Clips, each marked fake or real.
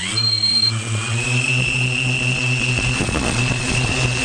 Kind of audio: fake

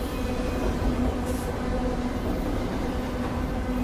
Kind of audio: real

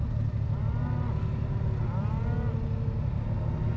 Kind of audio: real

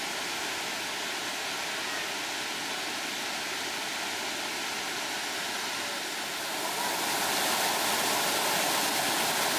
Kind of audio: real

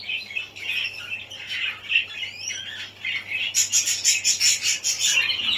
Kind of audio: real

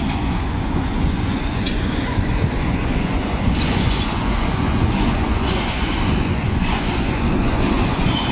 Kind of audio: fake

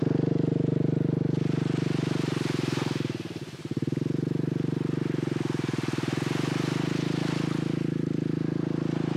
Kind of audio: real